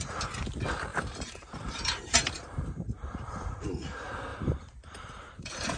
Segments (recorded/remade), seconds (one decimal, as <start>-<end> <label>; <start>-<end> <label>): 0.0-0.9 recorded; 0.9-3.5 remade; 3.5-4.3 recorded; 4.3-5.8 remade